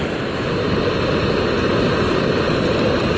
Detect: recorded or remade recorded